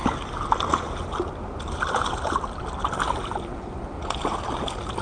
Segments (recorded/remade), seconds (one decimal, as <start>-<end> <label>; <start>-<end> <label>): 0.0-5.0 recorded